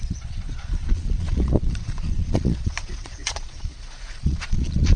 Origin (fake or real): fake